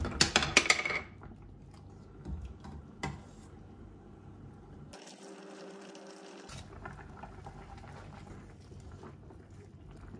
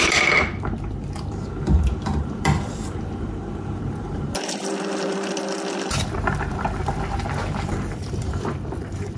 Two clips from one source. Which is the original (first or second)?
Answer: first